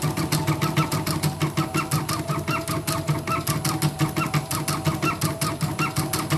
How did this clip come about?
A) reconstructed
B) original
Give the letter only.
B